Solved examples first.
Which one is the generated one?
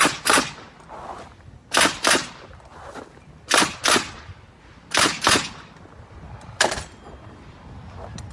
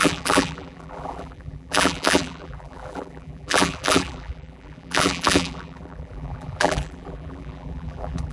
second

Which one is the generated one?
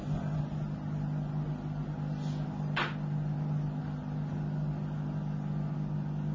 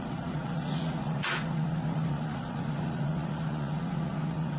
second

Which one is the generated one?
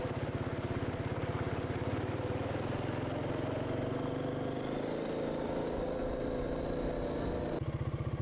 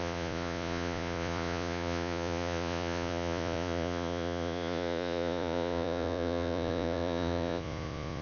second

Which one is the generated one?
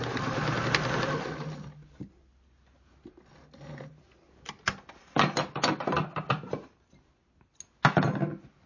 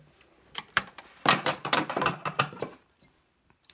second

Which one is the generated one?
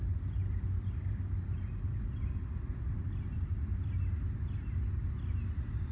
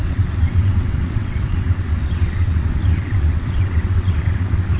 second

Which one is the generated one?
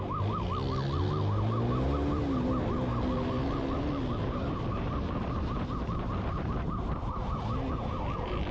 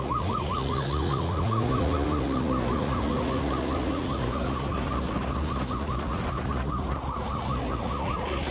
second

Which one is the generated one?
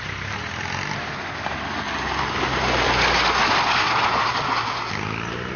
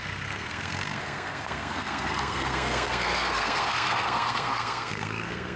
second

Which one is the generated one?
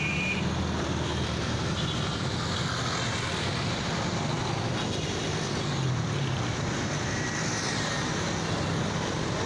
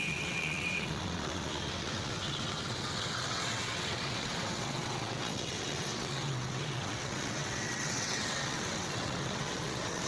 second